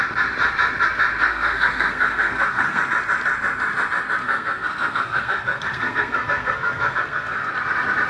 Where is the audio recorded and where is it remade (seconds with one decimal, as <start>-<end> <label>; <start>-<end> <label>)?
0.0-1.2 recorded; 1.2-2.8 remade; 2.8-4.2 recorded; 4.2-7.5 remade; 7.5-8.1 recorded